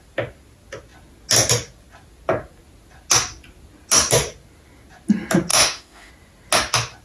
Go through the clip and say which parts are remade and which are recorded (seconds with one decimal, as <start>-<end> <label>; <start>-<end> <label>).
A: 0.0-5.5 recorded; 5.5-6.1 remade; 6.1-7.0 recorded